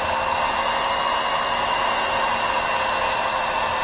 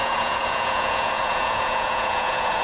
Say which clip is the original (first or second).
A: first